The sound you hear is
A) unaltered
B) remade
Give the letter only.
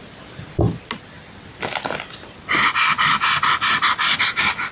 A